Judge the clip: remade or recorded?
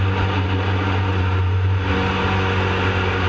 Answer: recorded